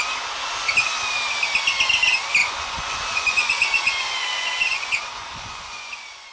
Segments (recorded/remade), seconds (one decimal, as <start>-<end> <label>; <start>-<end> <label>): 0.0-2.4 recorded; 2.4-6.3 remade